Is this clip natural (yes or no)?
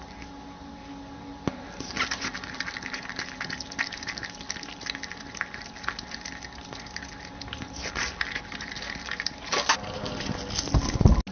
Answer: yes